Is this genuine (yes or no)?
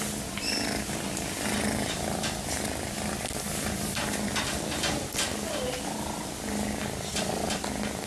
yes